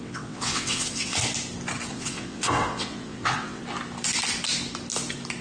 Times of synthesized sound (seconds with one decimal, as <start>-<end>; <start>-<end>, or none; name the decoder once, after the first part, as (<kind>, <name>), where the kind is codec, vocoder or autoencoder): 0.0-1.2 (vocoder, WaveNeXt); 1.9-3.6